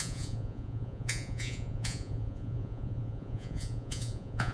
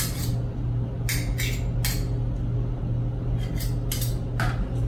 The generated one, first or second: first